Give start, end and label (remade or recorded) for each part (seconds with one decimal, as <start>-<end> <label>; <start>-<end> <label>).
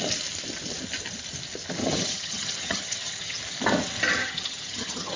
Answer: 0.0-1.8 recorded; 1.8-3.4 remade; 3.4-4.2 recorded; 4.2-5.2 remade